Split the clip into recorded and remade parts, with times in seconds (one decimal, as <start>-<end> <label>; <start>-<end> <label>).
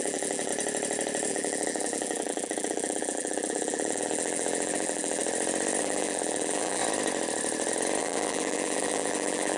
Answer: 0.0-0.5 remade; 0.5-1.3 recorded; 1.3-5.2 remade; 5.2-5.8 recorded; 5.8-6.8 remade; 6.8-8.0 recorded; 8.0-9.6 remade